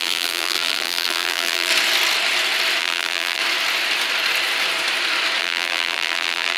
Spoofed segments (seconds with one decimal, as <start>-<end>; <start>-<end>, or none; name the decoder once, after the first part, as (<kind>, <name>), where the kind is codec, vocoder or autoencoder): 0.0-1.7 (vocoder, BigVGAN v2); 2.8-3.4; 5.4-6.6